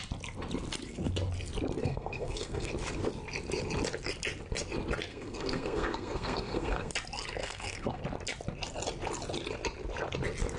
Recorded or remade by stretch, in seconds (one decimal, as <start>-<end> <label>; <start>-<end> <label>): 0.0-1.8 recorded; 1.8-2.7 remade; 2.7-5.1 recorded; 5.1-6.9 remade; 6.9-7.4 recorded; 7.4-8.0 remade; 8.0-10.6 recorded